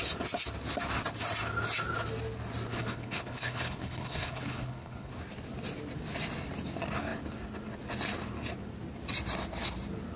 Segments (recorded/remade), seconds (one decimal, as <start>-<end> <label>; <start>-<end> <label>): 0.0-2.7 recorded; 2.7-5.1 remade; 5.1-10.2 recorded